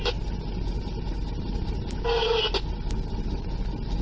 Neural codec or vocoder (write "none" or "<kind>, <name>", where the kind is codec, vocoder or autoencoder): none